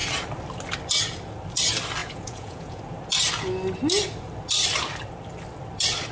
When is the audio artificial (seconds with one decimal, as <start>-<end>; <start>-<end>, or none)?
2.0-2.8